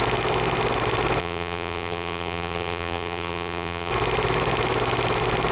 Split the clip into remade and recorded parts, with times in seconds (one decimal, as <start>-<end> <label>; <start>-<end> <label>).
0.0-1.2 recorded; 1.2-3.9 remade; 3.9-5.5 recorded